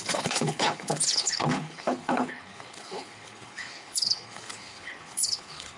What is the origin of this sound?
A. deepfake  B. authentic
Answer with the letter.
A